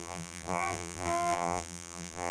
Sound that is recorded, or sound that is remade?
remade